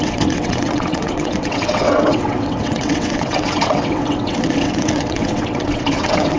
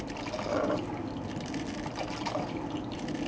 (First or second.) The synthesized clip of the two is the first